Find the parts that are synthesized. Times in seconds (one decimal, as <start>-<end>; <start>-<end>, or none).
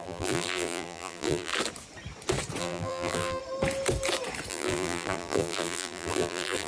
0.0-1.5; 2.6-3.4; 4.5-6.7